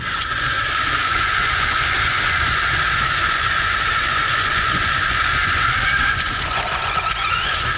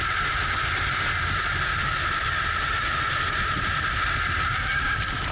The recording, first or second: second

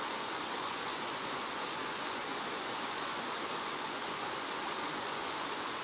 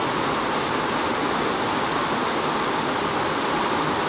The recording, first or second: second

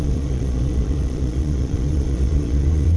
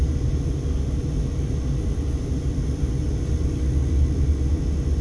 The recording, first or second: second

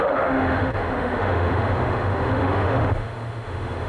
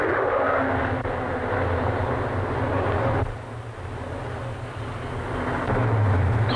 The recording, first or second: second